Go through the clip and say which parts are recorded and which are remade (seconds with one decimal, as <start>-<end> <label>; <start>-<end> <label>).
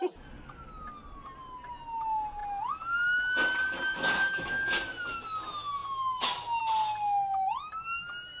0.0-8.4 recorded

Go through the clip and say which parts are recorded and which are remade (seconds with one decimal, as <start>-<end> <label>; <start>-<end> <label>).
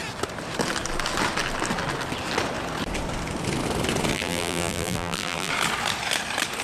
0.0-4.1 recorded; 4.1-5.5 remade; 5.5-6.6 recorded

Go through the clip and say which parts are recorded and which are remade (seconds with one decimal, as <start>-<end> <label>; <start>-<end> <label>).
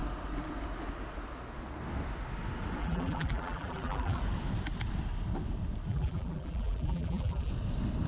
0.0-2.8 recorded; 2.8-4.2 remade; 4.2-5.9 recorded; 5.9-7.5 remade; 7.5-8.1 recorded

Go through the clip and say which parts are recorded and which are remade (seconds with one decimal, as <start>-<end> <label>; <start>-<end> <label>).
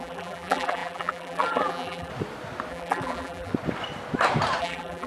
0.0-2.1 remade; 2.1-2.7 recorded; 2.7-3.5 remade; 3.5-4.6 recorded; 4.6-5.1 remade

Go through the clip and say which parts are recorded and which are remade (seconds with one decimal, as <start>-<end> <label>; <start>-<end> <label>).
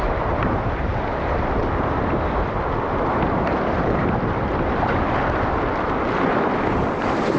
0.0-0.9 remade; 0.9-1.6 recorded; 1.6-7.4 remade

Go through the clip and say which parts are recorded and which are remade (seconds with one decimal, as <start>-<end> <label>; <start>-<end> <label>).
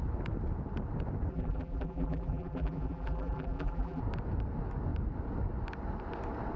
0.0-1.3 recorded; 1.3-4.0 remade; 4.0-6.6 recorded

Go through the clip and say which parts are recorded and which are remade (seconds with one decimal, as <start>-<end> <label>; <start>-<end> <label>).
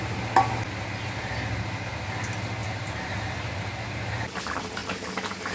0.0-2.6 recorded; 2.6-4.1 remade; 4.1-5.5 recorded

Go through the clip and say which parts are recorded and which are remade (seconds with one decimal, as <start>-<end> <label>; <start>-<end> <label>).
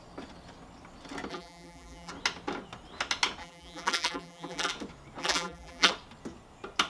0.0-1.3 recorded; 1.3-2.1 remade; 2.1-3.4 recorded; 3.4-4.7 remade; 4.7-5.2 recorded; 5.2-5.9 remade; 5.9-6.9 recorded